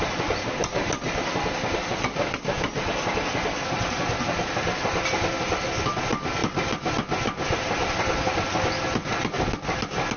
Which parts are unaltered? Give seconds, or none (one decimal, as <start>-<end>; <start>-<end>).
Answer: 0.0-10.2